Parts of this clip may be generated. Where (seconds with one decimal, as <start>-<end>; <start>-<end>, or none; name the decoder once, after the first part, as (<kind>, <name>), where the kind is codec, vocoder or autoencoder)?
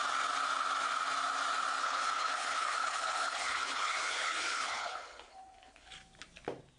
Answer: 1.8-5.9 (codec, HILCodec)